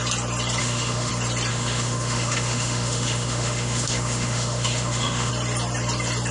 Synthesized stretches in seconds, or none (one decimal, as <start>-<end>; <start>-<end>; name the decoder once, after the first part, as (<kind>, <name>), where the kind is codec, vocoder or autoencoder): 0.6-1.1 (autoencoder, DAC-VAE); 1.5-5.3